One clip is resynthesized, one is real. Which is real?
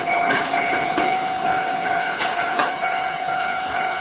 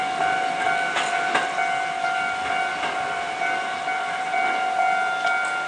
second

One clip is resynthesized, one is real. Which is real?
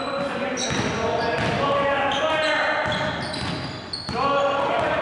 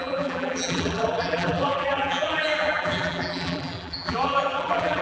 first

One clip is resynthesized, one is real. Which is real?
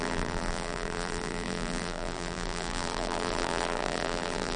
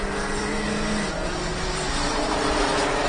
second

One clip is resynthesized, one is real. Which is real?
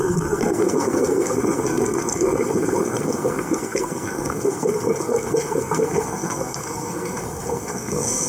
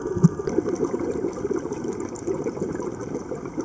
second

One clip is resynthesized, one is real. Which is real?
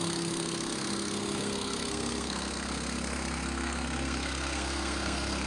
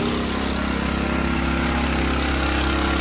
second